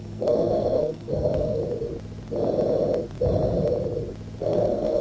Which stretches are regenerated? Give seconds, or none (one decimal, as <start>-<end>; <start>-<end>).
0.0-1.6; 4.4-5.0